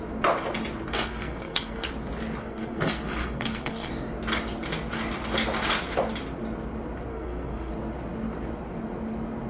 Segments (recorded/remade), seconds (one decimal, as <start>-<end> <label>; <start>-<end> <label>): 0.0-0.9 recorded; 0.9-1.9 remade; 1.9-2.4 recorded; 2.4-3.9 remade; 3.9-7.1 recorded; 7.1-7.7 remade; 7.7-9.5 recorded